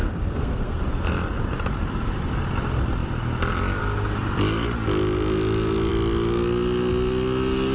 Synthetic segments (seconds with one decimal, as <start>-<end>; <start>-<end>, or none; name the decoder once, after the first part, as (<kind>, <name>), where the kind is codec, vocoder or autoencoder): 0.0-0.8 (codec, SNAC)